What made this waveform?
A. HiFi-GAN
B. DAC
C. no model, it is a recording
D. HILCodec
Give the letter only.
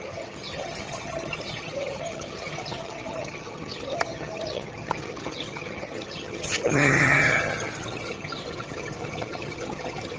A